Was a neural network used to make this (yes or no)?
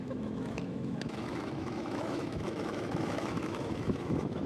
yes